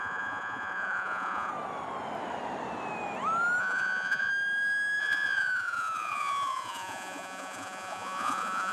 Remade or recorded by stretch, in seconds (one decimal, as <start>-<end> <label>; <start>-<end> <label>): 0.0-1.5 remade; 1.5-3.6 recorded; 3.6-4.3 remade; 4.3-5.0 recorded; 5.0-8.7 remade